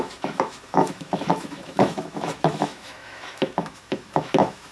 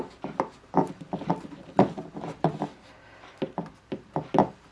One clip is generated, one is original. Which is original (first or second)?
second